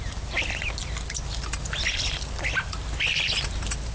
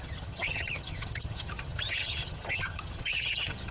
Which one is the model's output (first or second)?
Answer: second